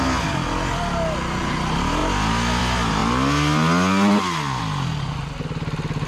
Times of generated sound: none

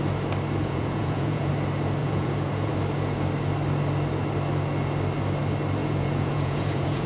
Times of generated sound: 0.6-1.5; 2.0-2.7; 5.8-7.1

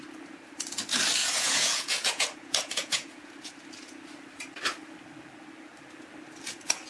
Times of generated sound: 1.2-3.3

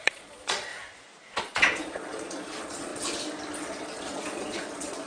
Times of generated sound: 0.0-0.7; 1.4-2.9; 3.6-5.1

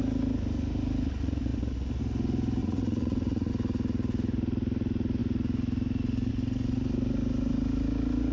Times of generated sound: 2.6-3.5

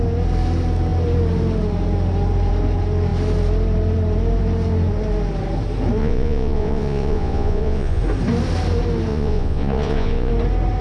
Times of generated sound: 6.0-8.0; 9.1-10.3